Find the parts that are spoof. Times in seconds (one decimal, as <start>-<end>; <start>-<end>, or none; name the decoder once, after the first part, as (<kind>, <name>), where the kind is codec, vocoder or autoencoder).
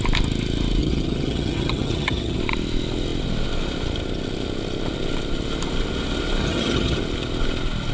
0.8-2.4 (vocoder, HiFi-GAN); 6.4-7.0